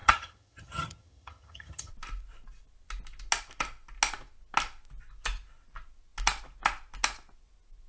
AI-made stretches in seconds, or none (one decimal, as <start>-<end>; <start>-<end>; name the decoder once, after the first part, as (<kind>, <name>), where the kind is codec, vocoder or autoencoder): 0.0-1.9 (vocoder, HiFi-GAN)